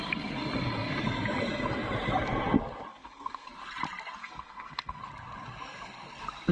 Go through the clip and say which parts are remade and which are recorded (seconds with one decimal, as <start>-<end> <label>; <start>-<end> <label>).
0.0-2.9 recorded; 2.9-3.5 remade; 3.5-4.2 recorded; 4.2-5.0 remade; 5.0-6.5 recorded